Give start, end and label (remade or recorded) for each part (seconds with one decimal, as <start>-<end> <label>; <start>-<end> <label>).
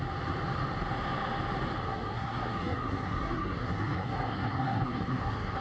0.0-1.8 recorded; 1.8-5.6 remade